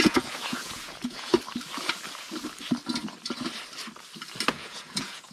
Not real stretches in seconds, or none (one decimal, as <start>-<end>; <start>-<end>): 0.0-1.3; 4.5-5.3